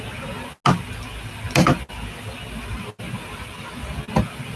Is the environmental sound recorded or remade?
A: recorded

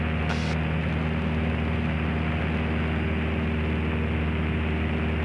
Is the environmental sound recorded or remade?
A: recorded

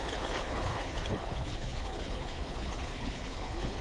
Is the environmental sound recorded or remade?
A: remade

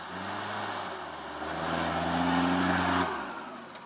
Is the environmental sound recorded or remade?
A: recorded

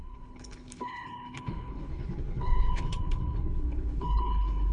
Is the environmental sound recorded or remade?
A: remade